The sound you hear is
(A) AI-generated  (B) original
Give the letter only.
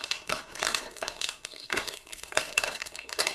A